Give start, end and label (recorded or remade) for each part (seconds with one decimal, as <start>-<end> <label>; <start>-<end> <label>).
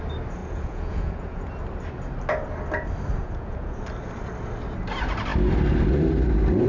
0.0-0.4 recorded; 0.4-1.5 remade; 1.5-3.2 recorded; 3.2-3.8 remade; 3.8-6.7 recorded